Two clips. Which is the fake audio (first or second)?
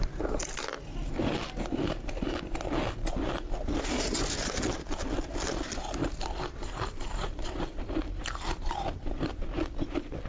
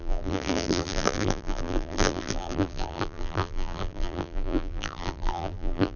second